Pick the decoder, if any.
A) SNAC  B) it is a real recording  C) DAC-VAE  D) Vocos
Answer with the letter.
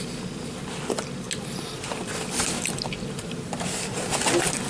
B